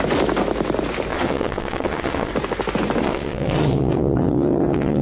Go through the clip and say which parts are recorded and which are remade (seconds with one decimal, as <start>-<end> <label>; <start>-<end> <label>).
0.0-1.1 recorded; 1.1-2.3 remade; 2.3-3.0 recorded; 3.0-5.0 remade